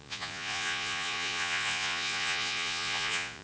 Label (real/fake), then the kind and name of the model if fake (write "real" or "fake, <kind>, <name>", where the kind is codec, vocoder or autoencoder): fake, vocoder, Vocos